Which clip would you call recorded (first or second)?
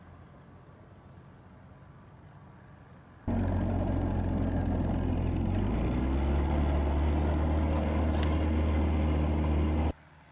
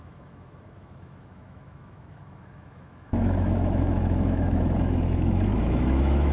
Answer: first